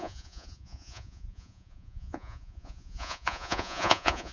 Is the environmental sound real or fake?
fake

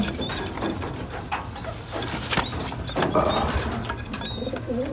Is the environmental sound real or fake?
real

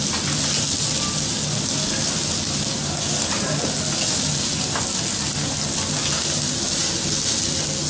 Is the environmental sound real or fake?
real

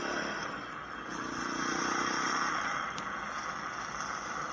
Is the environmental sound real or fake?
fake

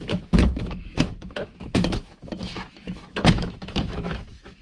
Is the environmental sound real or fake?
fake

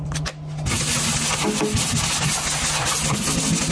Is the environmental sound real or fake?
real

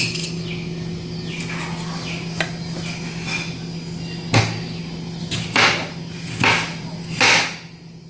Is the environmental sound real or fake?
real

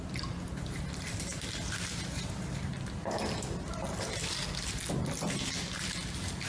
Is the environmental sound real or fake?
real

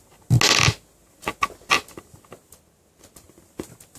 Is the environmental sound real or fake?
real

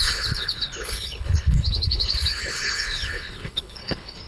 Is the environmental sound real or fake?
fake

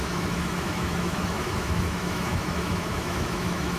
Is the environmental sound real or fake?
fake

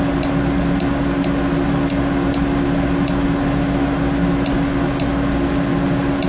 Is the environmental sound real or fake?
real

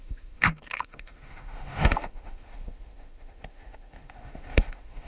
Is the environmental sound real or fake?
fake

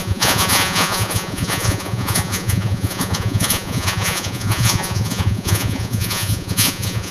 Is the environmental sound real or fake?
fake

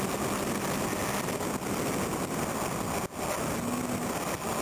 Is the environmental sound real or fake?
real